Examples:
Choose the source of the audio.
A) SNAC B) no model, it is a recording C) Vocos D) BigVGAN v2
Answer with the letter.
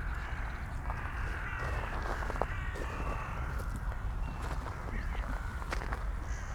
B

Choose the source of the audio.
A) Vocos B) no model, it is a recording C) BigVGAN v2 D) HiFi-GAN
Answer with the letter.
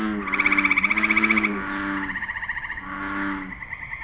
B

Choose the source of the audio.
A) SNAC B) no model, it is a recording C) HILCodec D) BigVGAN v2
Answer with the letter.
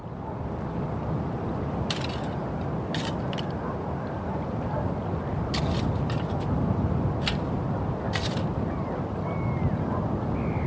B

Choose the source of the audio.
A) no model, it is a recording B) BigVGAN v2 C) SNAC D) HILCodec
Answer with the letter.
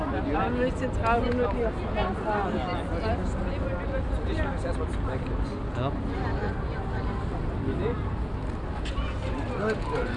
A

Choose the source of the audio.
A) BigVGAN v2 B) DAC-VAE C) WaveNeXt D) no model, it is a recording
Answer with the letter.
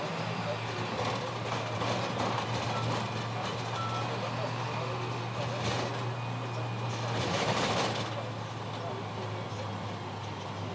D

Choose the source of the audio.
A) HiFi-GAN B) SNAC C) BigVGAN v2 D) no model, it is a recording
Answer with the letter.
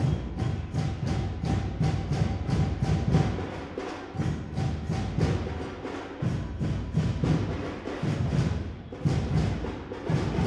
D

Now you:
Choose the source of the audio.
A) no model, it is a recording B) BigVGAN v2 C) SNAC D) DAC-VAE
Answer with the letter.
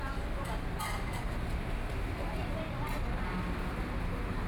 A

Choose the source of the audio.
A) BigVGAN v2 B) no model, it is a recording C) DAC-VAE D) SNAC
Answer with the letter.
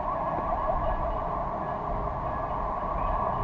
B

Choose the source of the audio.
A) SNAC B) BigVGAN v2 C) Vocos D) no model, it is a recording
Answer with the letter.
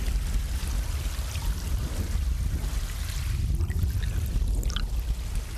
D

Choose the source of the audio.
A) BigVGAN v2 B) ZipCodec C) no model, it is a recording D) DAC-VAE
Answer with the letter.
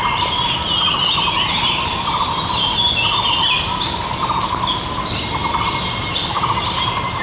C